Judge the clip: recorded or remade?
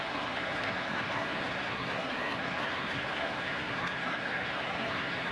remade